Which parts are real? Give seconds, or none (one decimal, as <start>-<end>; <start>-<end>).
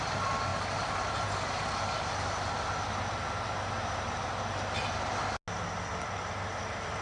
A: 0.0-0.5; 2.9-7.0